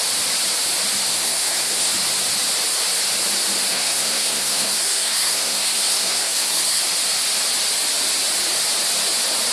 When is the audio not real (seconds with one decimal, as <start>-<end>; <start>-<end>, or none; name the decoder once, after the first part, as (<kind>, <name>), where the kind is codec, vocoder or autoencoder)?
1.1-1.9 (codec, SNAC); 3.7-6.8